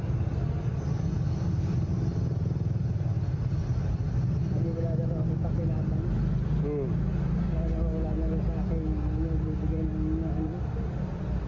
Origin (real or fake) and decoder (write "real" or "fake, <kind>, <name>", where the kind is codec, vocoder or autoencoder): real